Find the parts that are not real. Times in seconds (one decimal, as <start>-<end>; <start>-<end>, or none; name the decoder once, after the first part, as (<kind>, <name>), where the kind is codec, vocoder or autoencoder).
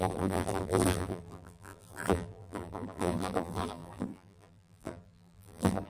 0.0-5.9 (vocoder, BigVGAN v2)